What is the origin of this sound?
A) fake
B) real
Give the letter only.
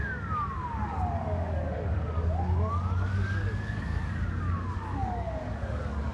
A